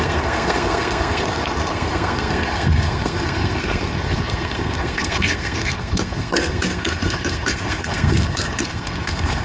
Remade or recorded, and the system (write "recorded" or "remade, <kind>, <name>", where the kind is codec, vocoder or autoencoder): remade, codec, SNAC